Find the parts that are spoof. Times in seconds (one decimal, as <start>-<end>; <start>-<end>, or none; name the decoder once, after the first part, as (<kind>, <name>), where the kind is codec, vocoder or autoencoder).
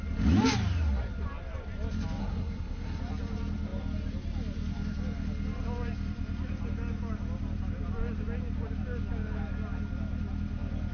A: 2.2-3.0 (codec, SNAC)